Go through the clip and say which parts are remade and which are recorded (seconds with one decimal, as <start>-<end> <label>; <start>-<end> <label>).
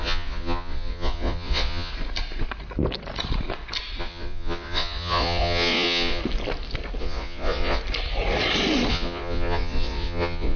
0.0-1.9 remade; 1.9-4.0 recorded; 4.0-6.2 remade; 6.2-7.0 recorded; 7.0-7.8 remade; 7.8-8.9 recorded; 8.9-10.6 remade